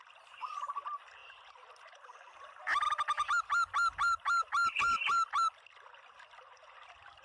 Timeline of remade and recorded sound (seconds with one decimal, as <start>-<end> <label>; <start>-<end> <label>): 0.0-7.2 recorded